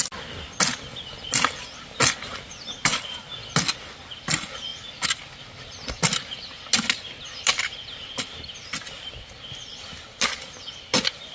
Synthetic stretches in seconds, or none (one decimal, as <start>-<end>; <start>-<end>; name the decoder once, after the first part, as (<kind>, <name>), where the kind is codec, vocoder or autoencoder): none